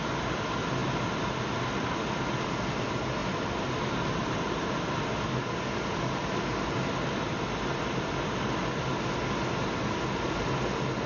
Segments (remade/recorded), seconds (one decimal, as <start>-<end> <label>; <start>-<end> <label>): 0.0-11.1 recorded